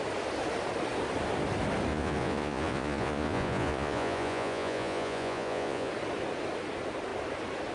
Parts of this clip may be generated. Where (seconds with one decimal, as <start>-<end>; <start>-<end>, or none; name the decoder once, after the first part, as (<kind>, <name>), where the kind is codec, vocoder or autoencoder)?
1.9-5.9 (vocoder, Vocos)